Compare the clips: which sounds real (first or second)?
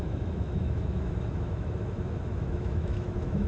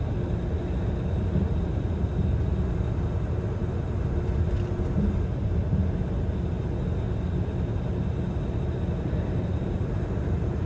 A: second